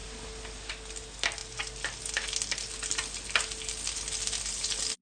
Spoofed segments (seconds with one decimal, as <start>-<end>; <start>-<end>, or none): none